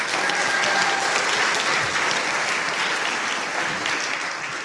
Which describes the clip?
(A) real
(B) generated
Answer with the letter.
A